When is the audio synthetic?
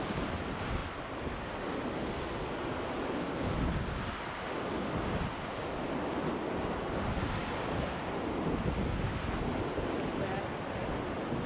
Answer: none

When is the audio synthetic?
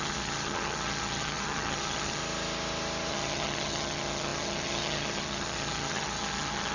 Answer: 0.0-2.2 (vocoder, HiFi-GAN); 3.1-6.7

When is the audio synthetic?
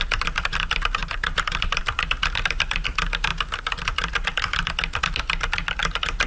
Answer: 1.0-1.8 (vocoder, BigVGAN v2)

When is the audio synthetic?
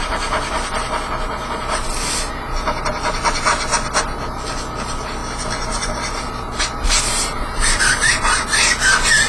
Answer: 5.2-7.8 (vocoder, BigVGAN v2)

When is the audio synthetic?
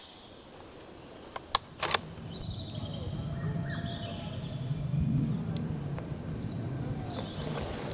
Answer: none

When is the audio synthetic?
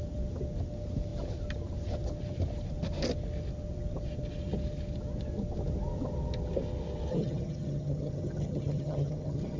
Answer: 7.1-9.6 (vocoder, HiFi-GAN)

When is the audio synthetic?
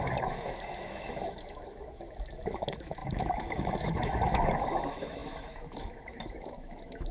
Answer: 0.0-7.1 (autoencoder, DAC-VAE)